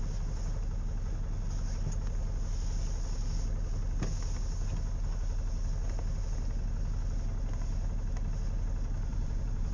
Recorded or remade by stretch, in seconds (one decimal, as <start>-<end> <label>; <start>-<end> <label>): 0.0-9.1 recorded; 9.1-9.7 remade